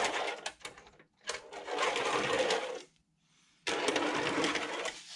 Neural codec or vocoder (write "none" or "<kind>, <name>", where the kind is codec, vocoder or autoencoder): vocoder, BigVGAN v2